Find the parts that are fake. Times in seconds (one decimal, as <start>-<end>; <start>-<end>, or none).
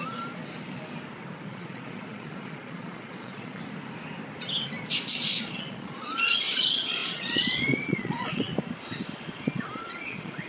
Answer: 0.0-0.4; 1.5-3.6; 5.1-8.5; 9.4-10.5